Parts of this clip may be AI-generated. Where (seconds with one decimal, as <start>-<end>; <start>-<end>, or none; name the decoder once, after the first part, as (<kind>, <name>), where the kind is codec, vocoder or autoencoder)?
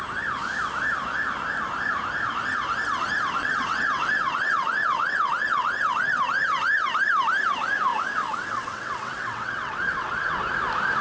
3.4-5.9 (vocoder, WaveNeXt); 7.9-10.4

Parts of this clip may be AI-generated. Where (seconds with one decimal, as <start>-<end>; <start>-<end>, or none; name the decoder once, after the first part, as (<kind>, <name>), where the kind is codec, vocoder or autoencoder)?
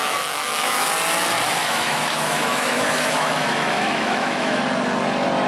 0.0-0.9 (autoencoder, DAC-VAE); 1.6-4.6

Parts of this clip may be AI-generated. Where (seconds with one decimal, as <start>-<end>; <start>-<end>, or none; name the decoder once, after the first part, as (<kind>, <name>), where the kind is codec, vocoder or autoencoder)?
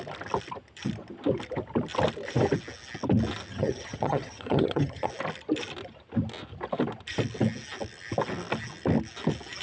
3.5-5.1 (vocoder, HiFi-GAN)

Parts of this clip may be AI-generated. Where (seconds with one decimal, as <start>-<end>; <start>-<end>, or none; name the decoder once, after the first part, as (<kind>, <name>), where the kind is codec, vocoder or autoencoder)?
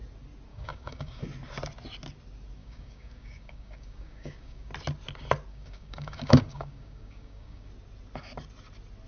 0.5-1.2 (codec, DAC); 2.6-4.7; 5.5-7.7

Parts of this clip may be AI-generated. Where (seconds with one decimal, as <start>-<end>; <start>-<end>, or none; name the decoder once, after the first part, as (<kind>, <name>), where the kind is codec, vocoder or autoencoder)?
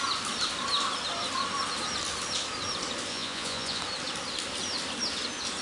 3.1-3.8 (vocoder, Vocos)